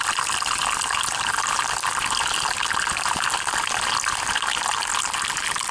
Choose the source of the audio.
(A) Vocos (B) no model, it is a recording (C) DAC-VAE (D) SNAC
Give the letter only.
B